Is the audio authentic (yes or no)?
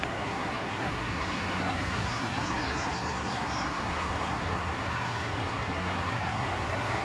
no